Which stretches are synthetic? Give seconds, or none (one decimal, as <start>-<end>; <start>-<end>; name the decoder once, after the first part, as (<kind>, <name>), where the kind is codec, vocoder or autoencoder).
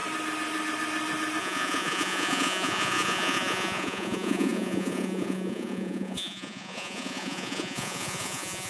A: 1.4-8.7 (vocoder, Vocos)